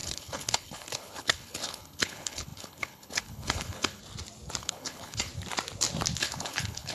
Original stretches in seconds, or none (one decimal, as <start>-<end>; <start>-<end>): 4.0-4.6; 5.3-6.2